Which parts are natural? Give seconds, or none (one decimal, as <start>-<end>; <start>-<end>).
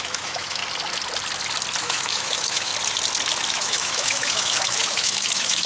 0.6-1.8; 2.7-3.5